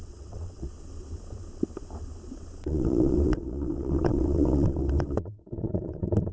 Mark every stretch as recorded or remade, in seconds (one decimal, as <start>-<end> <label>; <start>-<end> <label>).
0.0-0.7 remade; 0.7-2.6 recorded; 2.6-6.3 remade